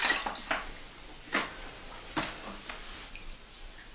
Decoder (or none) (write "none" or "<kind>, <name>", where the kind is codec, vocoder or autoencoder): none